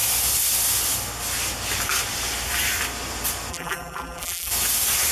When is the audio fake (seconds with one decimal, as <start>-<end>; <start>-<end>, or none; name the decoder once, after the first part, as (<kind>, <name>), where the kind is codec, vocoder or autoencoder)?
3.5-4.5 (vocoder, BigVGAN v2)

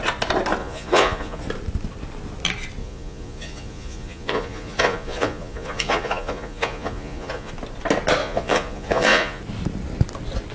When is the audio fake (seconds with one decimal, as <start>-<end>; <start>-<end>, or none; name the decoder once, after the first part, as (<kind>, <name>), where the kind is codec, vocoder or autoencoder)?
0.6-1.4 (vocoder, Vocos); 2.8-7.5; 8.2-9.4